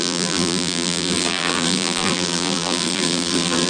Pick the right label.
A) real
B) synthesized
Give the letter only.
B